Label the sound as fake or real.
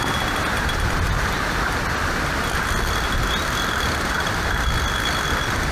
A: real